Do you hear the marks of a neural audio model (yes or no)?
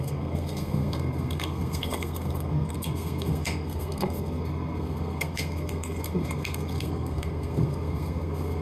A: yes